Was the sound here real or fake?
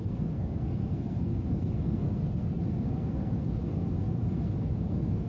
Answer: fake